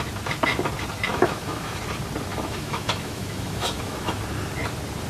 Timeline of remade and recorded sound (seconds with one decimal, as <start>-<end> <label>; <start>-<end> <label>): 0.0-1.1 recorded; 1.1-1.8 remade; 1.8-2.3 recorded; 2.3-4.2 remade; 4.2-5.1 recorded